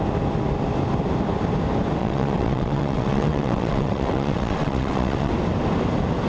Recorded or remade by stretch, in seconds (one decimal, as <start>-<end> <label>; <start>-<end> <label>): 0.0-2.0 recorded; 2.0-5.3 remade; 5.3-6.3 recorded